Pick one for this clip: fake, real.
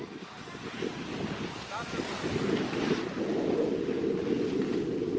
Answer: real